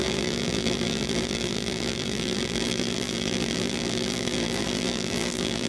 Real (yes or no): no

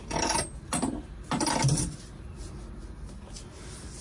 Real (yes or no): yes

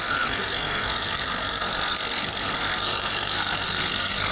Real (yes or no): no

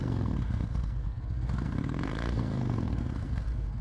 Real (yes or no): no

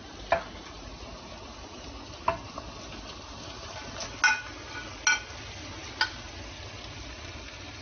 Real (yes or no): yes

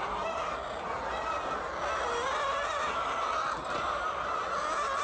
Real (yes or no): yes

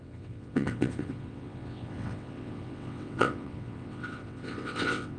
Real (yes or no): no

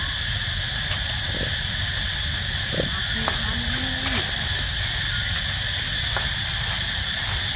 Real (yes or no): yes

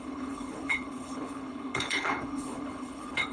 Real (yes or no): no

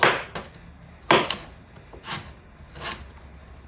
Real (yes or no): yes